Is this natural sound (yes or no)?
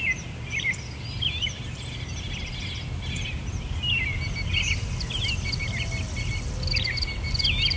yes